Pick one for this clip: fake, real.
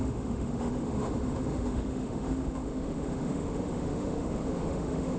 fake